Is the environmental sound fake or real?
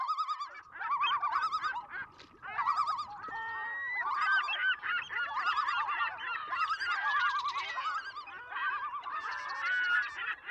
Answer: real